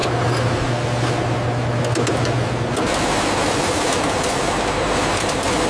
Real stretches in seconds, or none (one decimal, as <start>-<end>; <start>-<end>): 0.0-3.4